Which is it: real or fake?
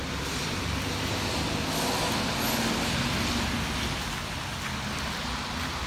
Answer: real